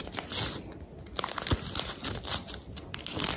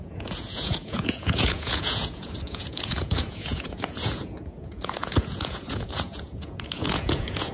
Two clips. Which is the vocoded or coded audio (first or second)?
second